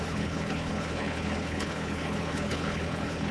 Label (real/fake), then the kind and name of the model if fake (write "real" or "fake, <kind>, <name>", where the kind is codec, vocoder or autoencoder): fake, codec, HILCodec